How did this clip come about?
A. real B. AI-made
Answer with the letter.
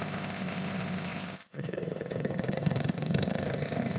B